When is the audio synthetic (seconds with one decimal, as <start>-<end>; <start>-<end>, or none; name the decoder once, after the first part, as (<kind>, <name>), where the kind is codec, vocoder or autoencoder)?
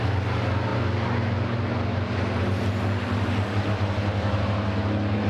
none